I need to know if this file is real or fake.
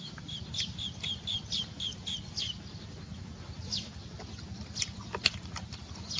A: real